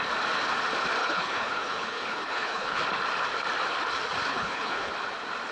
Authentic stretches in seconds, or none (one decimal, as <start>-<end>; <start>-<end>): 0.0-1.0; 2.8-4.3; 4.9-5.5